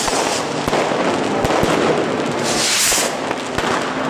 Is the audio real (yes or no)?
yes